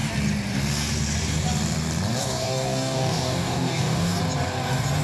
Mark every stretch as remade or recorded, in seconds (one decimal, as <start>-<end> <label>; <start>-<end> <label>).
0.0-2.2 recorded; 2.2-4.2 remade; 4.2-5.0 recorded